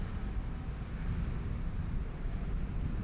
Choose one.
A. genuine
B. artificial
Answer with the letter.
B